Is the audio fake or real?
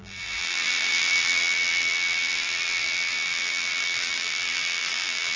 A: fake